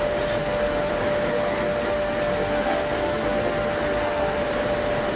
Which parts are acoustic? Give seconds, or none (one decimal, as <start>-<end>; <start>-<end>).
0.0-0.4; 0.9-1.3; 4.4-5.2